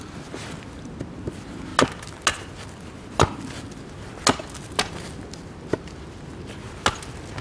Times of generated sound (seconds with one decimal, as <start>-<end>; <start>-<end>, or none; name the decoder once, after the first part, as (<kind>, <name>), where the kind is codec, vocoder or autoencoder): none